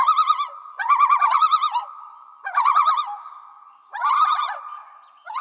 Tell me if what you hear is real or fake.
fake